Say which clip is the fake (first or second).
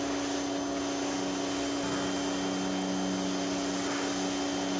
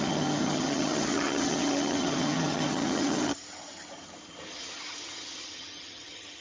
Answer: second